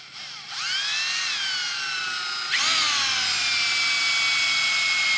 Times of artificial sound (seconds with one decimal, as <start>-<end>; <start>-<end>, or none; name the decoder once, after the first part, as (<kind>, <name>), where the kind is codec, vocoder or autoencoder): none

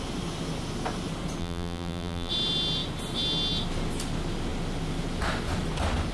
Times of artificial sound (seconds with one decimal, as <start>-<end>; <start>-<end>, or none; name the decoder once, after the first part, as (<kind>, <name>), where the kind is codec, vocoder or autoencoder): 1.4-2.3 (vocoder, BigVGAN v2)

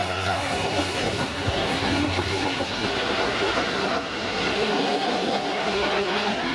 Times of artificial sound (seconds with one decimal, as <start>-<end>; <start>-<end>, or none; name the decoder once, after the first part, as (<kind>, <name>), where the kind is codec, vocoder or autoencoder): 0.0-6.5 (codec, SNAC)

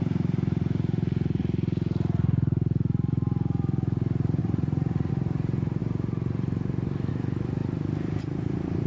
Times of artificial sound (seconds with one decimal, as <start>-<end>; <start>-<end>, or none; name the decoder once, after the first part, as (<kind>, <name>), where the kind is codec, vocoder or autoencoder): 4.4-5.1 (vocoder, Vocos)

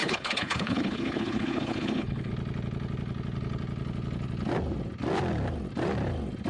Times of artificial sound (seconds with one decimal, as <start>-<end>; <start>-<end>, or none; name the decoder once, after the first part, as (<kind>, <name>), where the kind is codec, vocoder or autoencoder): 0.0-2.3 (codec, HILCodec)

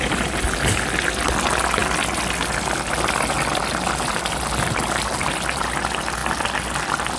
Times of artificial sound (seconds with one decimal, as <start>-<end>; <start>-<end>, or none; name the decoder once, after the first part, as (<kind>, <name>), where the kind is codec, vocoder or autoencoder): none

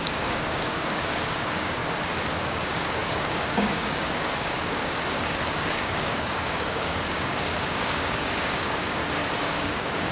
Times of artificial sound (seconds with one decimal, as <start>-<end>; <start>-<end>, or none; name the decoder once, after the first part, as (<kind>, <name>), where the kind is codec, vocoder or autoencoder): 0.0-1.8 (codec, DAC); 2.4-9.0; 9.5-10.1